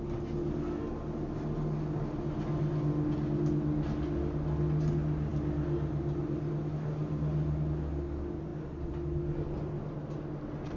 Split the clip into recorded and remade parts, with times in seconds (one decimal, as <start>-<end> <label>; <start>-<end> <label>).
0.0-10.8 recorded